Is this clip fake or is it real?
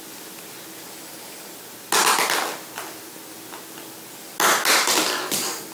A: real